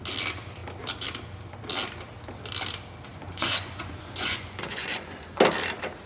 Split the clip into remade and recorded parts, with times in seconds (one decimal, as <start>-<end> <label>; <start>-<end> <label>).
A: 0.0-3.1 recorded; 3.1-5.4 remade; 5.4-6.1 recorded